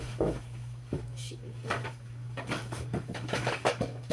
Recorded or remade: remade